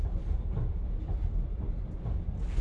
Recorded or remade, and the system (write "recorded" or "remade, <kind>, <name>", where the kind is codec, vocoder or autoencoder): recorded